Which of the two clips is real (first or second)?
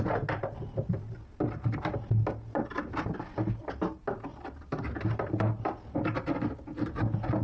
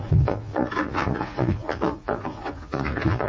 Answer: first